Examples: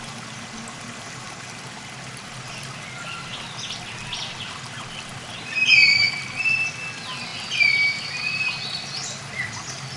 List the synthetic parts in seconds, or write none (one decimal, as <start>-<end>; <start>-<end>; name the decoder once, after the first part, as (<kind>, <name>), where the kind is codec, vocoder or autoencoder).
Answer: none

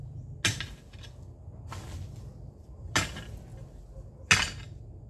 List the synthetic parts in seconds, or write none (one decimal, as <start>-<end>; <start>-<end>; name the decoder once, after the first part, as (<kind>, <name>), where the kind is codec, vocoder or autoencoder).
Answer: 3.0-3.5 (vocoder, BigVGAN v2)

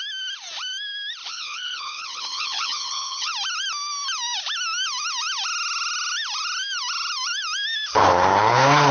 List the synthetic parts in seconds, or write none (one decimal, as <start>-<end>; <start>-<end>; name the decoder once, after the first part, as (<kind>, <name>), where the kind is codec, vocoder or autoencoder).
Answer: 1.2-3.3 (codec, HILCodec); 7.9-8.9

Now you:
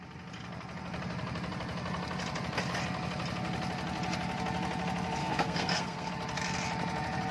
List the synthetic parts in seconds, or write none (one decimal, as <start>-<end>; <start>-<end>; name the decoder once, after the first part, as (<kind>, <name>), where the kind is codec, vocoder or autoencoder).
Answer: 5.2-6.1 (codec, SNAC)

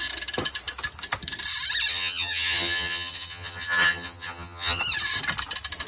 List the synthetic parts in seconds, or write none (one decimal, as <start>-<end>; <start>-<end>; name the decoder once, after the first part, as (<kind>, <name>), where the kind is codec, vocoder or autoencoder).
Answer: 1.9-4.8 (vocoder, HiFi-GAN)

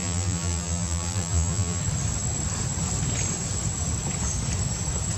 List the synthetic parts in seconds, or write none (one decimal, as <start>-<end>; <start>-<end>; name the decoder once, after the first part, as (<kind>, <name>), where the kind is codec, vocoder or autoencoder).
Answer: 0.0-1.8 (vocoder, BigVGAN v2)